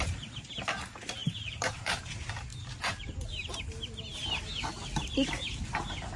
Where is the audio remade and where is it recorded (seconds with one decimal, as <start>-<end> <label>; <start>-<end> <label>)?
0.0-1.2 recorded; 1.2-2.0 remade; 2.0-2.5 recorded; 2.5-3.6 remade; 3.6-6.2 recorded

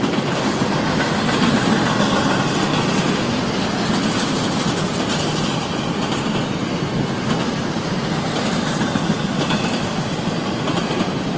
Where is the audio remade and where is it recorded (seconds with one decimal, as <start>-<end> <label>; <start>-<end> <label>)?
0.0-11.4 recorded

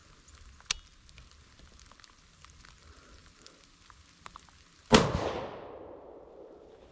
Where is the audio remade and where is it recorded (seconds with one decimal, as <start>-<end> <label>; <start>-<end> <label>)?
0.0-6.9 recorded

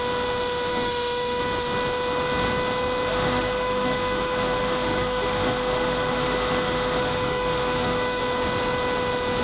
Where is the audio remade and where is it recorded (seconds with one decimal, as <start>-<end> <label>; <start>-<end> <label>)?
0.0-0.7 recorded; 0.7-1.4 remade; 1.4-3.1 recorded; 3.1-8.2 remade; 8.2-9.4 recorded

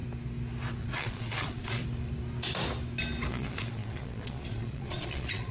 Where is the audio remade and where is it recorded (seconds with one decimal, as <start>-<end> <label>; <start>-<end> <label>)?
0.0-0.8 recorded; 0.8-1.8 remade; 1.8-3.3 recorded; 3.3-5.5 remade

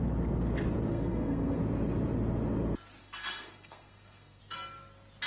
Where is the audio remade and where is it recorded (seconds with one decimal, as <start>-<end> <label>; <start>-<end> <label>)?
0.0-0.9 recorded; 0.9-1.6 remade; 1.6-3.0 recorded; 3.0-4.4 remade; 4.4-5.3 recorded

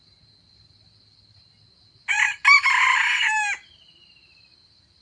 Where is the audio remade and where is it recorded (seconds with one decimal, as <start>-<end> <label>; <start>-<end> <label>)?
0.0-5.0 recorded